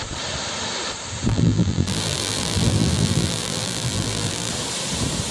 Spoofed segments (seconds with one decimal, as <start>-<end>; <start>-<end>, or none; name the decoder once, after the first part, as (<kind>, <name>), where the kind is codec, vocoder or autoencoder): 1.3-4.5 (vocoder, BigVGAN v2)